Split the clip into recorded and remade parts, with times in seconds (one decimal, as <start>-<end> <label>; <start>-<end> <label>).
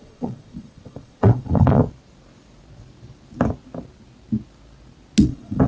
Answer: 0.0-1.8 remade; 1.8-5.2 recorded; 5.2-5.7 remade